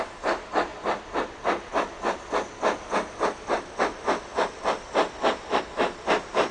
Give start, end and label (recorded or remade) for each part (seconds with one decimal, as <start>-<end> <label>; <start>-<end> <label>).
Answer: 0.0-6.5 recorded